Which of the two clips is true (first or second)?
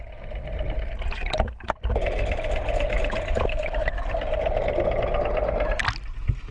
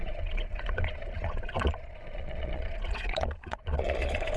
first